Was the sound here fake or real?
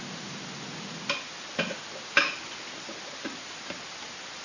real